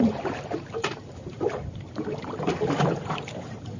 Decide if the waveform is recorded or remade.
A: remade